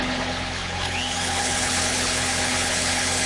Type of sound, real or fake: fake